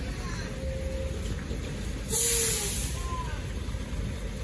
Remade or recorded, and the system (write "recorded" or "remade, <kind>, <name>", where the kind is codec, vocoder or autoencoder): recorded